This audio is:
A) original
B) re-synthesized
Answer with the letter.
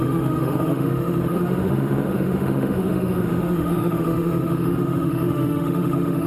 B